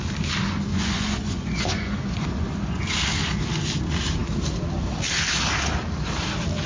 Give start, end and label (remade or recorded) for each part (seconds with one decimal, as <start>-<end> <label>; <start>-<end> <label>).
0.0-0.7 recorded; 0.7-2.8 remade; 2.8-6.7 recorded